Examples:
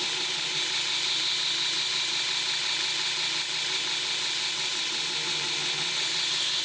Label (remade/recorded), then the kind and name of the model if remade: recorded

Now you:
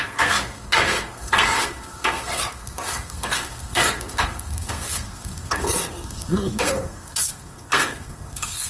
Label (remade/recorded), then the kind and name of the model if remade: remade, codec, SNAC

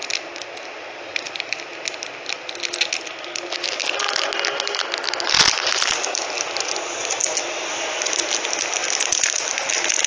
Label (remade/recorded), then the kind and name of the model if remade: recorded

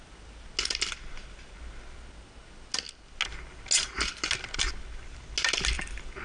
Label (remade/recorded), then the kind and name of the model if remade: recorded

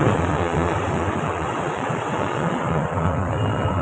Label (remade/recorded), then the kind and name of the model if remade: remade, vocoder, WaveNeXt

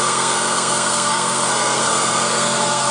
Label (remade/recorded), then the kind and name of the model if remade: remade, codec, SNAC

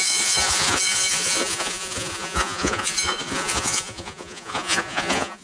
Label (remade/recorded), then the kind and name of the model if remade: remade, vocoder, Vocos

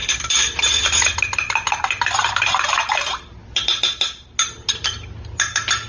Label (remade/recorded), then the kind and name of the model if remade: recorded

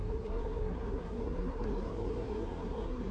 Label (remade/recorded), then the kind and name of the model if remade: remade, codec, SNAC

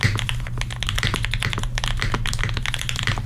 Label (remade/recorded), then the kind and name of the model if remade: recorded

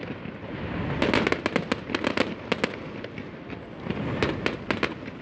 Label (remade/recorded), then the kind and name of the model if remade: recorded